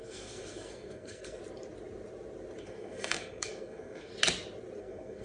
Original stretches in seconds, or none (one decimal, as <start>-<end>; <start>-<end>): 1.4-2.6; 4.1-4.8